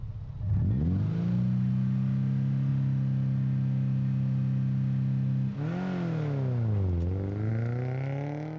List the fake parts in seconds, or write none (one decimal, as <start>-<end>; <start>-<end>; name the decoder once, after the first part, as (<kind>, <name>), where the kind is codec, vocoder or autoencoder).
none